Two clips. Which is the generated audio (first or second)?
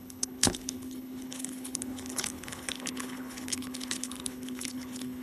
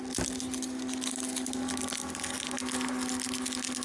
first